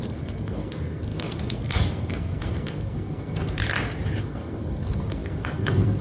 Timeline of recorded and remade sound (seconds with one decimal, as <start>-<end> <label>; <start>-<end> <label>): 0.0-3.6 remade; 3.6-4.2 recorded; 4.2-6.0 remade